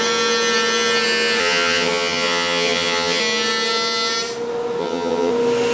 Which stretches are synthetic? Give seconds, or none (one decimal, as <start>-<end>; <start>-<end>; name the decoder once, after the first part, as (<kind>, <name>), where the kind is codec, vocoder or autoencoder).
1.4-3.2 (vocoder, HiFi-GAN); 4.8-5.3